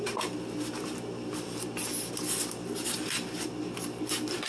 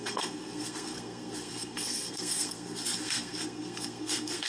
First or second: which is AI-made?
second